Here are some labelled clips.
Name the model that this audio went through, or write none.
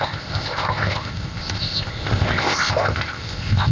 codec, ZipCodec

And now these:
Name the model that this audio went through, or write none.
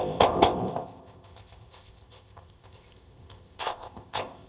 codec, ZipCodec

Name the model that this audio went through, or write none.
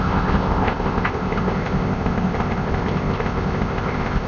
codec, ZipCodec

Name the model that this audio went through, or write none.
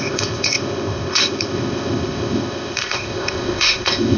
codec, ZipCodec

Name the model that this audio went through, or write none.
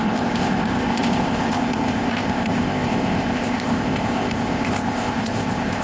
codec, ZipCodec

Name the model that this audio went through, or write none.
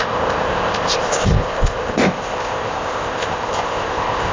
codec, ZipCodec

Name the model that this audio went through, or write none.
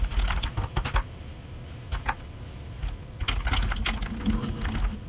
none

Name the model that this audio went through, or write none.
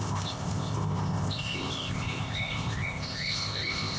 codec, ZipCodec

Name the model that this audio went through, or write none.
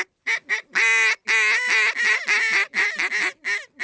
none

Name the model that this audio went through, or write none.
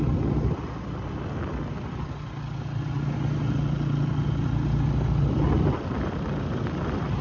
none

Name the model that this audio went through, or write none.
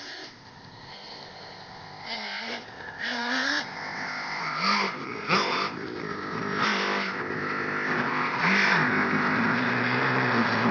codec, ZipCodec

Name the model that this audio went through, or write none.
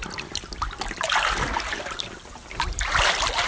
none